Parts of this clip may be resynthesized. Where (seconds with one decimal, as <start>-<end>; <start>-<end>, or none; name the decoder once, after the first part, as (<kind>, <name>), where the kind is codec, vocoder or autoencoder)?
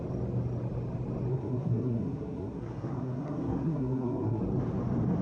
1.3-4.4 (codec, SNAC)